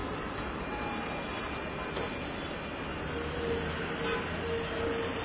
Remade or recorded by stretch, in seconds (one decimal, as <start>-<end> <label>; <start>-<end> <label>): 0.0-1.9 remade; 1.9-5.2 recorded

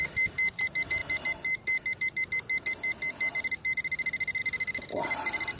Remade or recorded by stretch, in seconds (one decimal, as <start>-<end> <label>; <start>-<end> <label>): 0.0-1.0 remade; 1.0-4.4 recorded; 4.4-5.6 remade